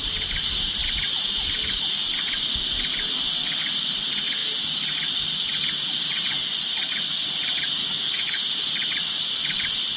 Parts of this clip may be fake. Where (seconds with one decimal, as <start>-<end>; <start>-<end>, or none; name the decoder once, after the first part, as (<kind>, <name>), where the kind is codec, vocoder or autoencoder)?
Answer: 7.8-8.5 (autoencoder, DAC-VAE)